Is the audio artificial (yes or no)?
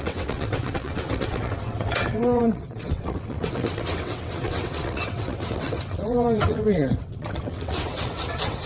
yes